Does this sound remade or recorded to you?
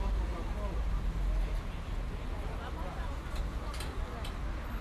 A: recorded